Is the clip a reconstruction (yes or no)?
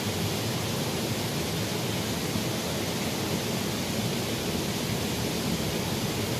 no